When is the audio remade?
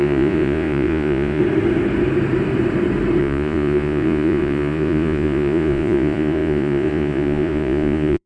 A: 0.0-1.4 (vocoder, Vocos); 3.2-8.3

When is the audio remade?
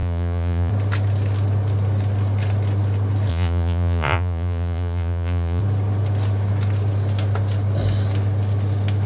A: 0.0-0.7 (vocoder, Vocos); 3.3-5.6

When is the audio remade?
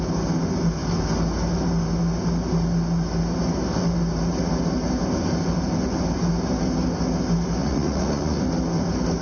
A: 7.6-8.4 (vocoder, Vocos)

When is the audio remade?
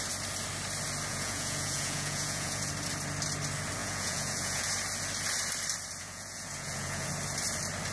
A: 1.1-2.7 (vocoder, Vocos); 3.8-4.7; 6.0-7.1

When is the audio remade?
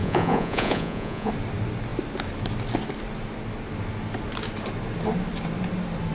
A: 0.0-1.3 (vocoder, Vocos)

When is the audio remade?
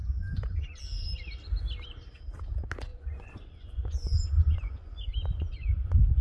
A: 0.0-0.8 (vocoder, Vocos); 2.9-6.2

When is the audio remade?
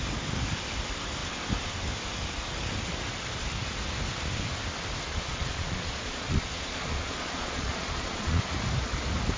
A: 5.1-8.4 (vocoder, Vocos)